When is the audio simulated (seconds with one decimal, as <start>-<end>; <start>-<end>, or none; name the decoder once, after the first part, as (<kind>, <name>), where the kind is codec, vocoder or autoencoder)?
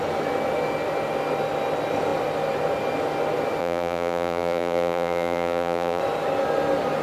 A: 3.6-6.0 (vocoder, BigVGAN v2)